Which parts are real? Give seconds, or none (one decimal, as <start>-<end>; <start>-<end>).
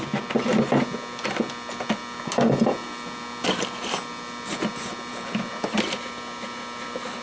0.0-7.2